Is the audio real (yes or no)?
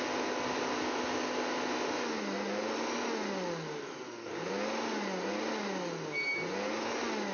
yes